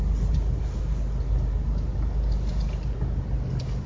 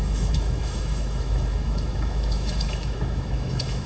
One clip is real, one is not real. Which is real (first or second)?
first